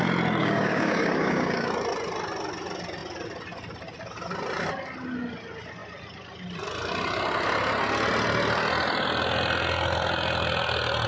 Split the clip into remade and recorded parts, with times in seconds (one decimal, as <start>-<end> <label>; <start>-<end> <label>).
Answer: 0.0-0.4 recorded; 0.4-1.7 remade; 1.7-11.1 recorded

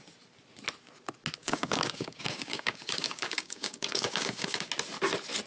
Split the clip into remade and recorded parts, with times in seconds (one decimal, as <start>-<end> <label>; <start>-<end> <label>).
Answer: 0.0-1.4 recorded; 1.4-4.7 remade; 4.7-5.5 recorded

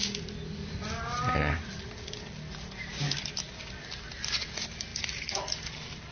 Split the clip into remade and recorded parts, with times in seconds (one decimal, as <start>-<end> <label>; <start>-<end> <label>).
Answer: 0.0-3.0 remade; 3.0-4.9 recorded; 4.9-6.1 remade

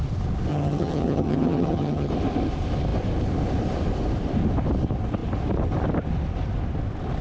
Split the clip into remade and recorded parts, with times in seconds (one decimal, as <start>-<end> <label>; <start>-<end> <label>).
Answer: 0.0-0.5 recorded; 0.5-2.1 remade; 2.1-7.2 recorded